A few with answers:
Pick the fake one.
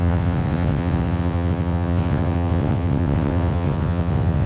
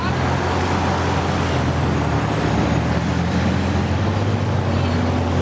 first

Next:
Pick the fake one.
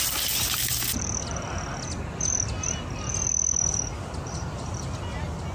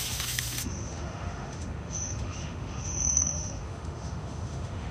second